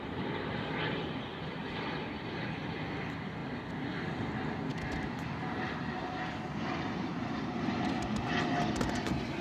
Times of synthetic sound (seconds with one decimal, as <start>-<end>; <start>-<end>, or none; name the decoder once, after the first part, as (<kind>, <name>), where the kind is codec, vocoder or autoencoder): none